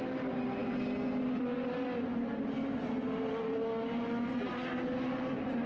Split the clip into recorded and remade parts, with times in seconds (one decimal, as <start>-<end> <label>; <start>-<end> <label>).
0.0-5.7 recorded